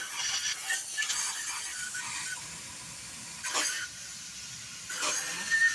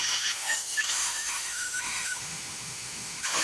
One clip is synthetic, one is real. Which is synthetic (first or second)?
second